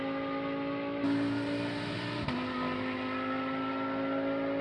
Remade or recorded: recorded